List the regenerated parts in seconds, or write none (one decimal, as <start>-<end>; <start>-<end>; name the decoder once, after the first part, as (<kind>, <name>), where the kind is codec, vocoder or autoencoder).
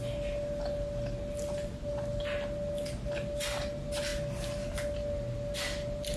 none